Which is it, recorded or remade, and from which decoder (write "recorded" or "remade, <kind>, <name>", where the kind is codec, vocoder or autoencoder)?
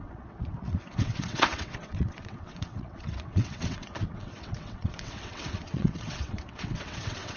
remade, vocoder, WaveNeXt